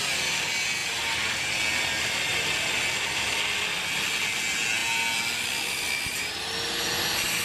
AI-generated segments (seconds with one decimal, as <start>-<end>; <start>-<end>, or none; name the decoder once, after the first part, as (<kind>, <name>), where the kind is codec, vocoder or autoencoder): none

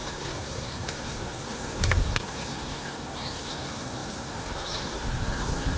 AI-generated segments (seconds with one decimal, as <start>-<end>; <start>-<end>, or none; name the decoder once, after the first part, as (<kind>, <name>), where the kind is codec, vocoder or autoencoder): 0.0-5.8 (codec, SNAC)

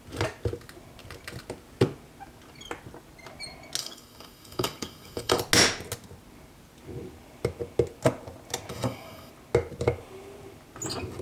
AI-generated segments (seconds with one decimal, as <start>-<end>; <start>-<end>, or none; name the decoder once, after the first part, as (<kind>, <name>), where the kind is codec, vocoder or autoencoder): 3.8-5.4 (codec, DAC); 8.7-9.3

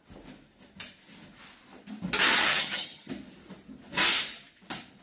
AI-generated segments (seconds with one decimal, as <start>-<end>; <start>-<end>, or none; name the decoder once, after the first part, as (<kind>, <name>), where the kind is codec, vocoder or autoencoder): 2.4-3.1 (vocoder, HiFi-GAN)

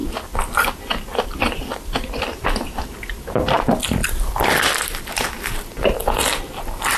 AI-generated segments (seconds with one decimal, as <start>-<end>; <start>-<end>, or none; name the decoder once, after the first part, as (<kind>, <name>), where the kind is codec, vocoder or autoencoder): 0.0-0.7 (vocoder, BigVGAN v2); 1.1-2.0; 4.0-5.1

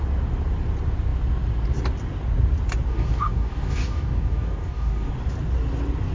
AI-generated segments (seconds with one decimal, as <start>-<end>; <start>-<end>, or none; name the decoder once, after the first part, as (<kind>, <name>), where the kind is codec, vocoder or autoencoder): 2.9-5.1 (codec, DAC)

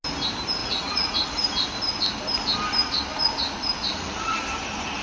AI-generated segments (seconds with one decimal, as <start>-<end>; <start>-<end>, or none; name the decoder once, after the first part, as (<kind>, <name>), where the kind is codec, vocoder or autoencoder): 0.6-1.3 (vocoder, Vocos); 3.9-4.4